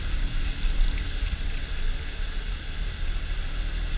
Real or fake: real